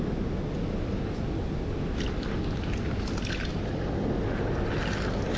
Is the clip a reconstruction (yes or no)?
no